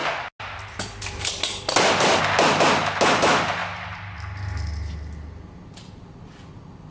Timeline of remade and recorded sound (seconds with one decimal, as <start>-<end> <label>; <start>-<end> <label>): 0.0-3.6 recorded; 3.6-5.6 remade; 5.6-6.9 recorded